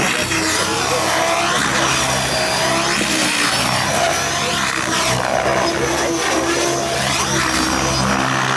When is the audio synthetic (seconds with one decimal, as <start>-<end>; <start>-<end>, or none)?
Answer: none